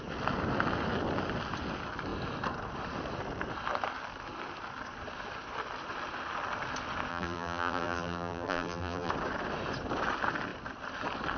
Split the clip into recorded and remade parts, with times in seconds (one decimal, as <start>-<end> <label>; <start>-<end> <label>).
0.0-7.1 recorded; 7.1-9.1 remade; 9.1-11.4 recorded